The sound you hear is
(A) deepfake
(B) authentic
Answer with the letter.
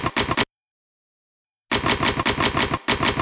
B